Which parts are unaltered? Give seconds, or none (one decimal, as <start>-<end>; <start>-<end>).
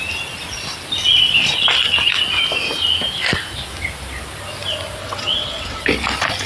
0.0-5.0; 5.8-6.5